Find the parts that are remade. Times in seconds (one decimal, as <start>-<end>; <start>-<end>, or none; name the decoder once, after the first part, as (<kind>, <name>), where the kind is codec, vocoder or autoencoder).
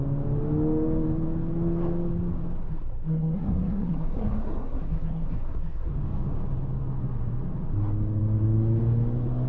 2.7-5.9 (codec, SNAC)